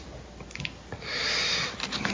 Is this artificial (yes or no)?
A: no